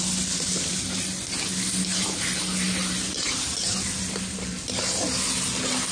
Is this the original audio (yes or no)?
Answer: yes